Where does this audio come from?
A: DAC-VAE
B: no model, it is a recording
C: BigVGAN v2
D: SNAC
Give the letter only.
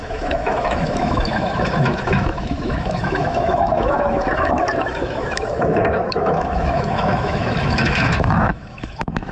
A